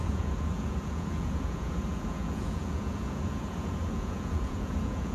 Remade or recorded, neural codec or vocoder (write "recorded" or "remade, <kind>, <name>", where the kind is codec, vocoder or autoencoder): remade, vocoder, Vocos